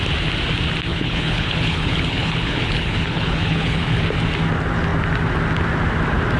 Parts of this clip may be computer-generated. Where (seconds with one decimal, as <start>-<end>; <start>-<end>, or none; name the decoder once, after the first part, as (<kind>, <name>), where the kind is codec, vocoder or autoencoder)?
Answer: 0.9-4.0 (codec, HILCodec)